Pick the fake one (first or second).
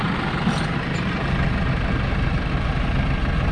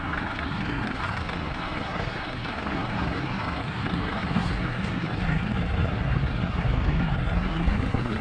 second